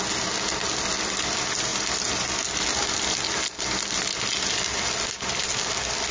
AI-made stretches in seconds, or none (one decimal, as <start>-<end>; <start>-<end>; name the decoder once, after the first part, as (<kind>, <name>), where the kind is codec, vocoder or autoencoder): none